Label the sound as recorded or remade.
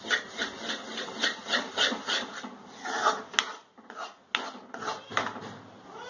recorded